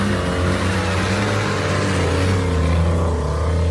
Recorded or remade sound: recorded